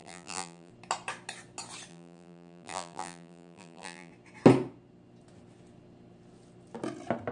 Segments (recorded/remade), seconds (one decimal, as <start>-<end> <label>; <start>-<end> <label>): 0.0-0.7 remade; 0.7-1.9 recorded; 1.9-4.1 remade; 4.1-7.3 recorded